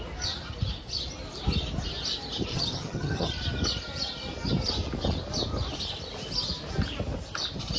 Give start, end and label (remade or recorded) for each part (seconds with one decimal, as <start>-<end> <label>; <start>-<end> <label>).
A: 0.0-2.5 recorded; 2.5-3.3 remade; 3.3-7.8 recorded